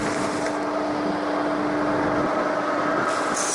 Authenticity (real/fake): real